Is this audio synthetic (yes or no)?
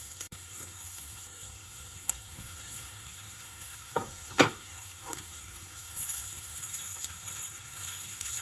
yes